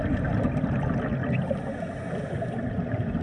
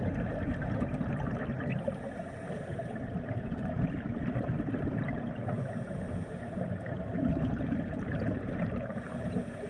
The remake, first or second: second